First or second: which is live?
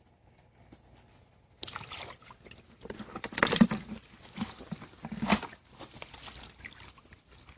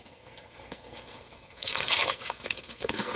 first